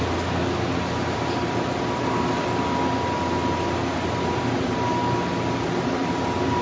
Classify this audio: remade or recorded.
recorded